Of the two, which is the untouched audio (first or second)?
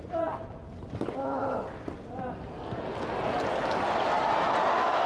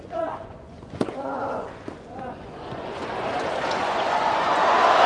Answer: first